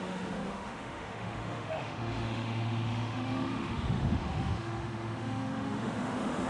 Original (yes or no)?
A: no